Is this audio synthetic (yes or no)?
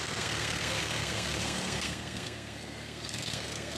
yes